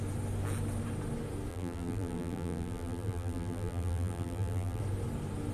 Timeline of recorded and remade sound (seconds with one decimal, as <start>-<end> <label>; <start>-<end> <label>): 0.0-1.5 recorded; 1.5-4.8 remade; 4.8-5.5 recorded